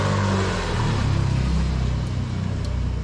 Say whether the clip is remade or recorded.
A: recorded